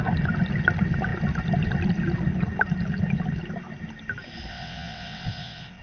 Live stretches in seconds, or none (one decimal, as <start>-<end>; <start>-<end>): 0.0-4.5